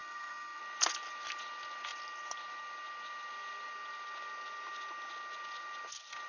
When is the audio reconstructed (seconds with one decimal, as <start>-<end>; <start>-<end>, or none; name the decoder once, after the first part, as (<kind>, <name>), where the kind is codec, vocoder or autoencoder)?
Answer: 0.0-0.6 (codec, SNAC)